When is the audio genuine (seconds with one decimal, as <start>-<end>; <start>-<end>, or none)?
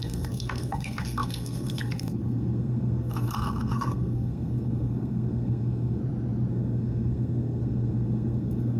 6.0-6.5